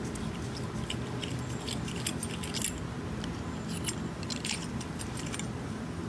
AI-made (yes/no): no